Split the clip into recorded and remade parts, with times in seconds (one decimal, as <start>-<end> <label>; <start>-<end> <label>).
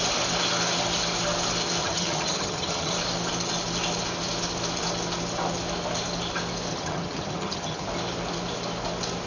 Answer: 0.0-1.8 recorded; 1.8-2.9 remade; 2.9-6.7 recorded; 6.7-7.9 remade; 7.9-9.3 recorded